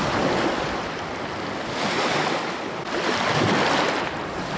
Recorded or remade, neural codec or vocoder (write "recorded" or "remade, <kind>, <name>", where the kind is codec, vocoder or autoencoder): recorded